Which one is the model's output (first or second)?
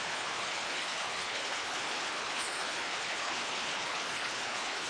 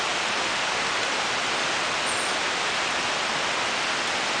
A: first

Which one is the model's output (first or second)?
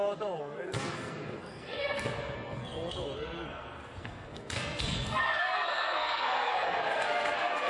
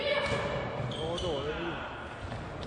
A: first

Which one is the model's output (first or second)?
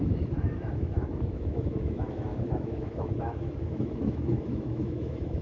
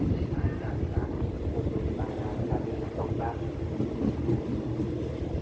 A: first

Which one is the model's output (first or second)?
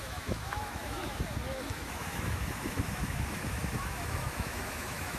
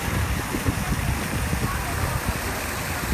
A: first